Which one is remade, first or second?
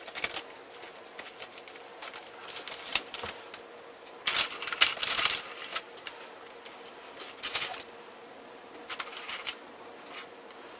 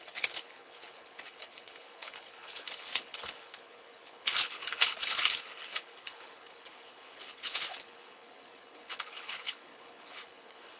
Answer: second